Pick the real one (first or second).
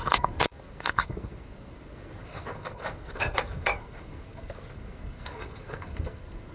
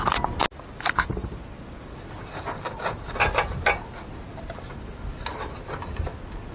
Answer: second